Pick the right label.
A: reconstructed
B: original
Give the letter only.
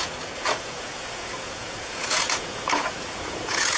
A